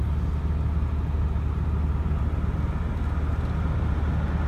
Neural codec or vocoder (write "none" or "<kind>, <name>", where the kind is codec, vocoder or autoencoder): none